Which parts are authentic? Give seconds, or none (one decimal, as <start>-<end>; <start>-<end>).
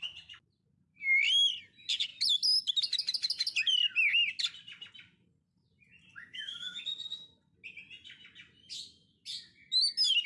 0.0-6.1; 6.8-10.3